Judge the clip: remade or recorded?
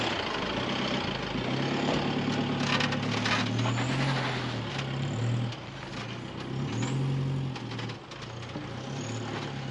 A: recorded